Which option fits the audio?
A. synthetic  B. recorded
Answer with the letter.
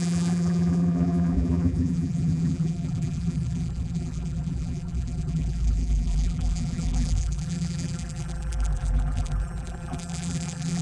A